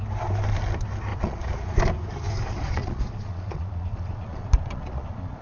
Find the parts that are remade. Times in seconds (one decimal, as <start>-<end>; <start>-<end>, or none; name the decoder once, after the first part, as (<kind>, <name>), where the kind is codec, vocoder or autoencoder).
1.1-1.8 (vocoder, Vocos); 2.6-5.4